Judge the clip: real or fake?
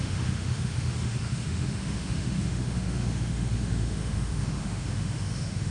fake